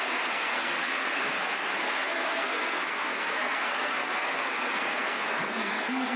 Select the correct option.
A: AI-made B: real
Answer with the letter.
A